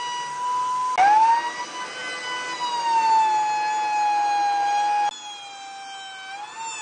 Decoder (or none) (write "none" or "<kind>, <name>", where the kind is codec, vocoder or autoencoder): none